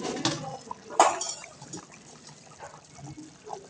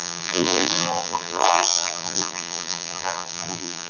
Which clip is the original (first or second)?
first